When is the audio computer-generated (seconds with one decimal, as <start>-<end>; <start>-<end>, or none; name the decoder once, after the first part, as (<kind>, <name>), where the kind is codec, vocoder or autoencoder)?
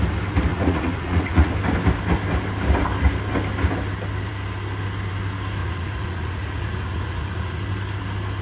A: 0.5-1.5 (vocoder, Vocos); 5.6-7.6